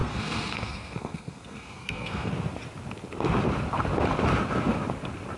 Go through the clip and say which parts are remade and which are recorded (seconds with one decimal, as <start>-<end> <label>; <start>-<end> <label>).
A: 0.0-2.3 remade; 2.3-5.4 recorded

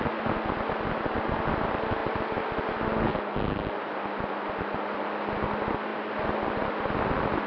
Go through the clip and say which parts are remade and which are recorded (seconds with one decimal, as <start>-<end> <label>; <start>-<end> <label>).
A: 0.0-7.5 recorded

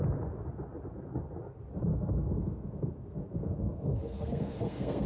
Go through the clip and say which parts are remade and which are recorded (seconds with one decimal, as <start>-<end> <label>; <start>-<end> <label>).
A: 0.0-1.9 recorded; 1.9-5.1 remade

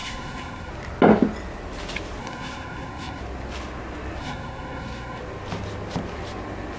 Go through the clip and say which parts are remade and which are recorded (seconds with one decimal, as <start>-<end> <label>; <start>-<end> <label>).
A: 0.0-0.7 remade; 0.7-2.2 recorded; 2.2-3.2 remade; 3.2-4.2 recorded; 4.2-5.2 remade; 5.2-6.8 recorded

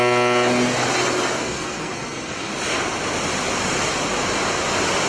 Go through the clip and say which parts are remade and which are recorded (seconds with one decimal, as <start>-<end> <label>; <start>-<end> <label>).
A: 0.0-1.4 recorded; 1.4-2.5 remade; 2.5-5.1 recorded

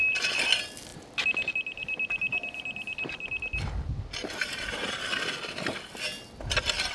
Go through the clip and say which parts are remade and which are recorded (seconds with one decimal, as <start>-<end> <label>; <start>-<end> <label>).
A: 0.0-6.9 recorded

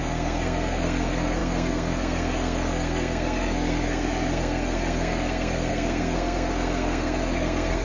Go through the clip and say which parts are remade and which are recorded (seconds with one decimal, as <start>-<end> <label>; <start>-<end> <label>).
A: 0.0-7.8 remade

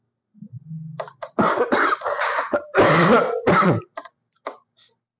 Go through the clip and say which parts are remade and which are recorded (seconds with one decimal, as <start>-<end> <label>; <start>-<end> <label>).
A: 0.0-5.2 recorded